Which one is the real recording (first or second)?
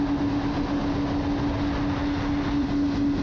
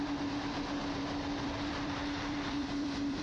first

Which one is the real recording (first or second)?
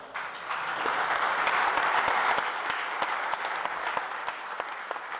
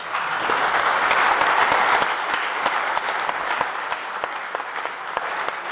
first